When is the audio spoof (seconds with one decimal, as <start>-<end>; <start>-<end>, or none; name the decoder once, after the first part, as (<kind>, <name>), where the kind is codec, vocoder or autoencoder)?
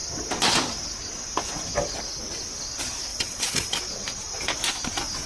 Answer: 3.1-3.8 (vocoder, Vocos)